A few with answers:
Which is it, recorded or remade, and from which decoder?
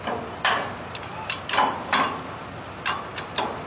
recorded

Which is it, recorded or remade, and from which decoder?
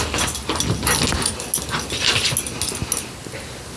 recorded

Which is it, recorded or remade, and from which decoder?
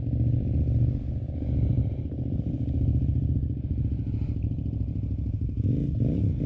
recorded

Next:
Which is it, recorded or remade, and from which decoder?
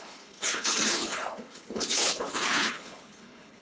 remade, codec, HILCodec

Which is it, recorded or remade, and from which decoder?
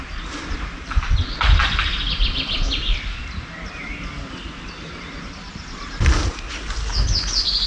recorded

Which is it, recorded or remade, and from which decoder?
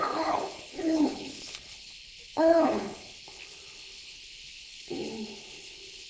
remade, codec, HILCodec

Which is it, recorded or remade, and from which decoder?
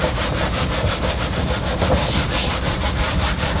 recorded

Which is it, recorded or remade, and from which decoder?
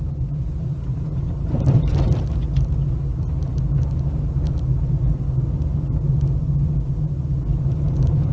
recorded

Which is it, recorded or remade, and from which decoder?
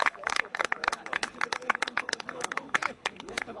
remade, codec, HILCodec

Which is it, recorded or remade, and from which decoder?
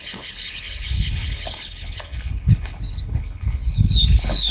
remade, codec, HILCodec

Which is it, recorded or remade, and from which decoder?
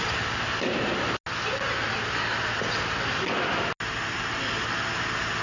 recorded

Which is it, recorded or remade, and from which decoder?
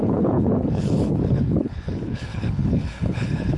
remade, codec, HILCodec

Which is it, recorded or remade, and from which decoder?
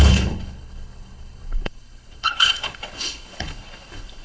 remade, codec, HILCodec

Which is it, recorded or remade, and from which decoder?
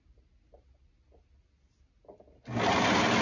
recorded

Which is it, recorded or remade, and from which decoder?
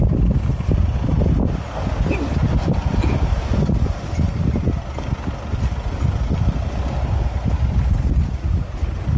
recorded